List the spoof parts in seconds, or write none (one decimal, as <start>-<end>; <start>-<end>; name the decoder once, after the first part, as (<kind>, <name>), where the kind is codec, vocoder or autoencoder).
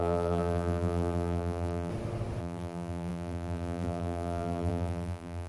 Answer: 0.0-1.9 (vocoder, BigVGAN v2); 2.4-5.5